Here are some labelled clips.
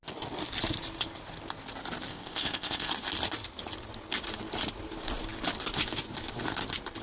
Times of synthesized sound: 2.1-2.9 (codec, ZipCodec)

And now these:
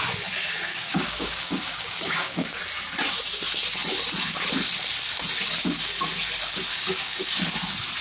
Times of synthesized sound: 0.7-2.6 (codec, DAC); 6.7-7.2

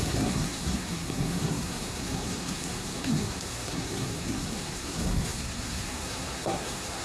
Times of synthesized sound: 0.0-7.0 (codec, SNAC)